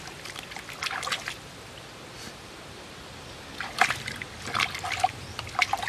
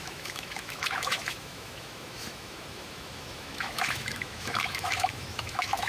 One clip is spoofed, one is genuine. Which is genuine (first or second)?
first